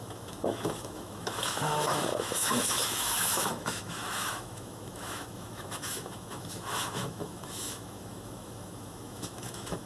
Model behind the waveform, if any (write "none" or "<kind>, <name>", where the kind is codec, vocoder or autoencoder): autoencoder, DAC-VAE